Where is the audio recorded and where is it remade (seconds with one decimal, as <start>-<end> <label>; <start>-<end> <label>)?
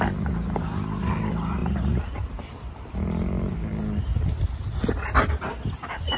0.0-6.2 recorded